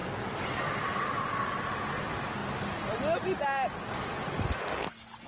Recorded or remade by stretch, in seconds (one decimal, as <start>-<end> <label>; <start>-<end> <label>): 0.0-5.3 recorded